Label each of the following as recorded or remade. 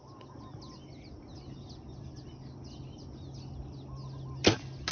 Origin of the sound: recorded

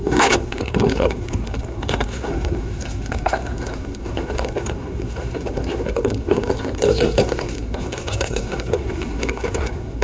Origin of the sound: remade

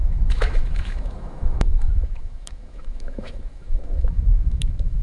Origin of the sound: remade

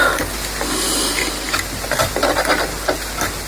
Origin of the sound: recorded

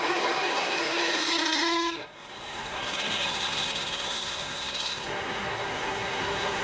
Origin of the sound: remade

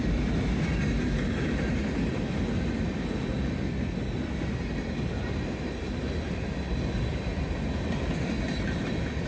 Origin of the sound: recorded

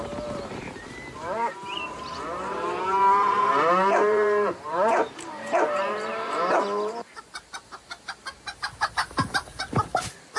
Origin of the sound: remade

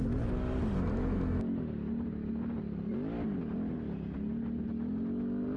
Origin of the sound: recorded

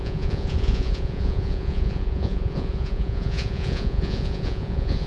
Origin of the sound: remade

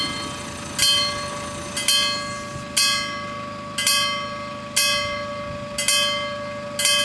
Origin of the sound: recorded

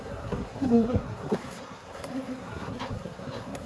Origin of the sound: remade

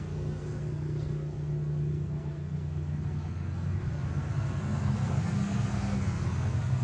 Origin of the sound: remade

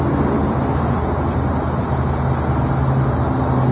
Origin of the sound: recorded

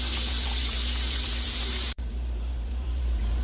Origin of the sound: remade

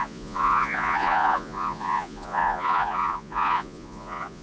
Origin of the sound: remade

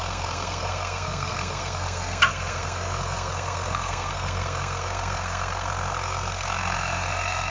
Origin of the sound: remade